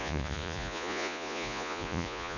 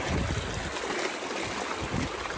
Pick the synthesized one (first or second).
first